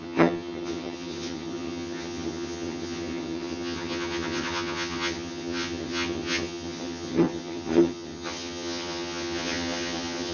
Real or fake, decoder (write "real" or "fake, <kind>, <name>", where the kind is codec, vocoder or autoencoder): fake, vocoder, HiFi-GAN